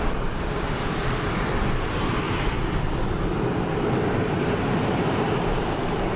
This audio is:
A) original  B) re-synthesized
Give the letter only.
A